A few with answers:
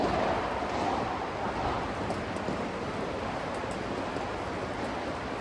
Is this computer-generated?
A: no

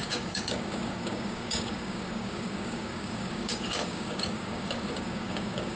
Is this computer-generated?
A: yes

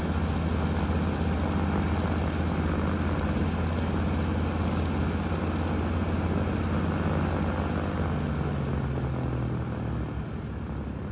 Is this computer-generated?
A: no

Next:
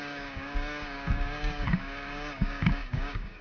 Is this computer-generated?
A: yes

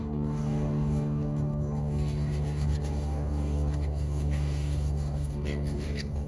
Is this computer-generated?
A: yes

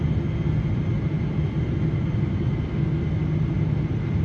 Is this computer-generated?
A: no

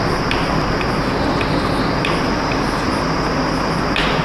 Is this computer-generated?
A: no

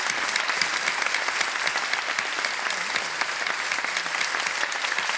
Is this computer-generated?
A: no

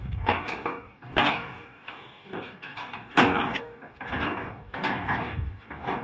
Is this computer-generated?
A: yes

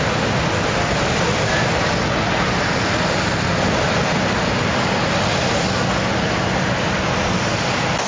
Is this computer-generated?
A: no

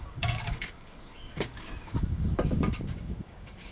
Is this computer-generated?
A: yes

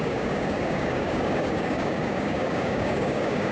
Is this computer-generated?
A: yes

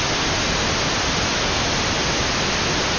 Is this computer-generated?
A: no